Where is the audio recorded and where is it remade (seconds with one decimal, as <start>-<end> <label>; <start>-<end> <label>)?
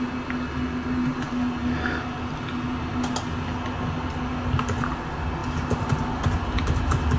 0.0-7.2 recorded